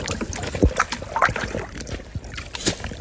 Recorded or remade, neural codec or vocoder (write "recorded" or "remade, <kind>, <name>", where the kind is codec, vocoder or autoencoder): recorded